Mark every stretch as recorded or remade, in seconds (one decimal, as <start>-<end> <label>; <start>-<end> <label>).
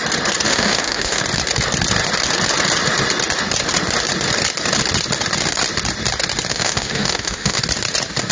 0.0-0.5 recorded; 0.5-1.2 remade; 1.2-6.5 recorded; 6.5-7.6 remade; 7.6-8.3 recorded